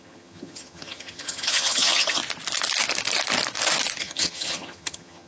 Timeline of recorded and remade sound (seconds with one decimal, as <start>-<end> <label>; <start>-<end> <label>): 0.0-2.2 remade; 2.2-4.0 recorded; 4.0-5.3 remade